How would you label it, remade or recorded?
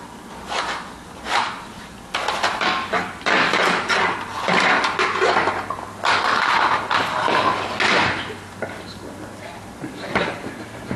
recorded